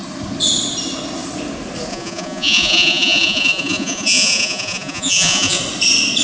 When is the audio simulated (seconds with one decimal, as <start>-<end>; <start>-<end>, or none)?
1.9-5.6